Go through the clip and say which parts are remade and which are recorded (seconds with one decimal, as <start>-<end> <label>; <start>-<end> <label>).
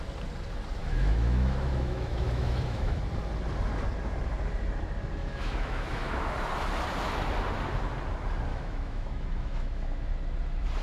0.0-0.8 recorded; 0.8-3.0 remade; 3.0-5.2 recorded; 5.2-6.3 remade; 6.3-8.5 recorded; 8.5-10.1 remade; 10.1-10.8 recorded